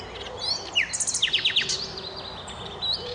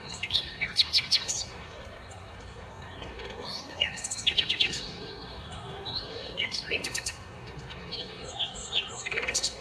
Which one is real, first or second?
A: first